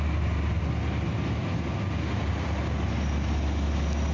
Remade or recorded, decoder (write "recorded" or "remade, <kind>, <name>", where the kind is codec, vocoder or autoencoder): recorded